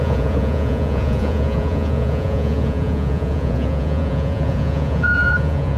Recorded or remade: remade